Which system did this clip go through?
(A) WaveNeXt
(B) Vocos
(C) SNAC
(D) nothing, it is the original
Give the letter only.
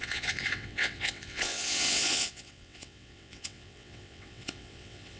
A